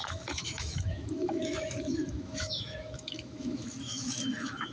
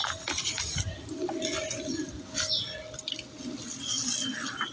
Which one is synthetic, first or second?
first